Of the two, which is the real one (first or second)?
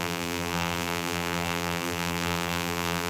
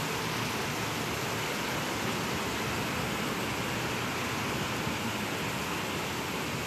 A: second